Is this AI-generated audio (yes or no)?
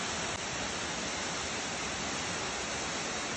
no